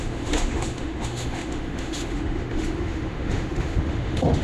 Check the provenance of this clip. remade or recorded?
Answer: remade